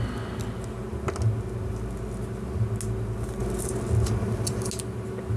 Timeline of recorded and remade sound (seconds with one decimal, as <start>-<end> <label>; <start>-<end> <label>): 0.0-3.4 recorded; 3.4-4.7 remade; 4.7-5.4 recorded